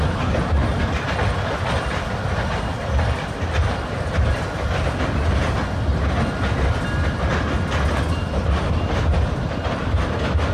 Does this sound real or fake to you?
real